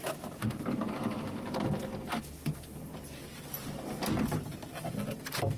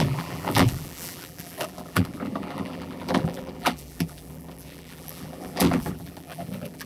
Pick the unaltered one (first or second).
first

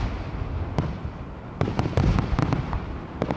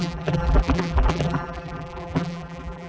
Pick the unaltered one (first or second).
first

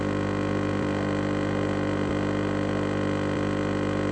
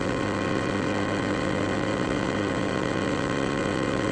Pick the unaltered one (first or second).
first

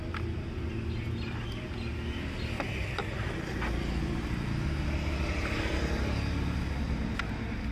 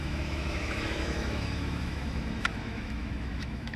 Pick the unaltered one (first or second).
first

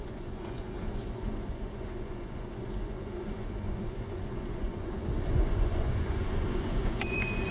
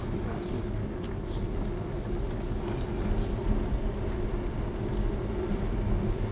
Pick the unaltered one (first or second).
second